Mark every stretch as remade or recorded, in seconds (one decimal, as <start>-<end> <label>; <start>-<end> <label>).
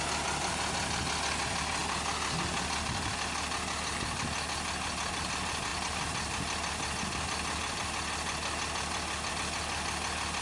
0.0-10.4 recorded